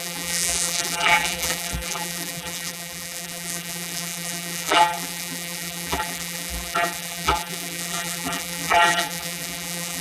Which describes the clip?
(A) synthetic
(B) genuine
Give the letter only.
A